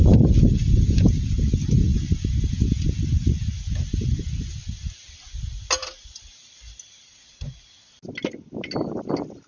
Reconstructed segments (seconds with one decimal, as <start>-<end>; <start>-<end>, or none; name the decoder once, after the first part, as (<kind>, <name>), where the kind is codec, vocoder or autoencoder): none